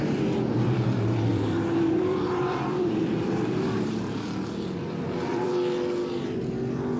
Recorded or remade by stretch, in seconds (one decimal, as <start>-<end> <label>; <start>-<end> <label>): 0.0-1.3 recorded; 1.3-5.5 remade; 5.5-7.0 recorded